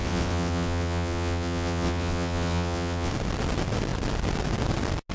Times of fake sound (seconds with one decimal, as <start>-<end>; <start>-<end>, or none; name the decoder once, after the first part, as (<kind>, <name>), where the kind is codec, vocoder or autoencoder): 0.0-3.1 (vocoder, WaveNeXt)